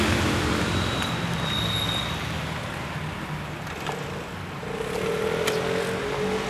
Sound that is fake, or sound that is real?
real